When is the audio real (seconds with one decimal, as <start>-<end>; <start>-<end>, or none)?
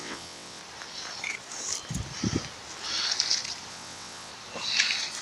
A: 0.6-3.7; 4.3-5.2